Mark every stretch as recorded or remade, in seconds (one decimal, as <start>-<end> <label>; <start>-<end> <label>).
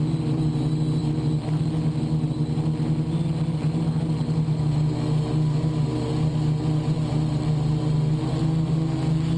0.0-9.4 recorded